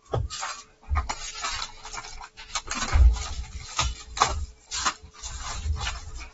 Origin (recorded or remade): recorded